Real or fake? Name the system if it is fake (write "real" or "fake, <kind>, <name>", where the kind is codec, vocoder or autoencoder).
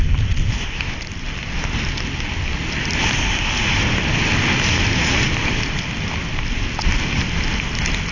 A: real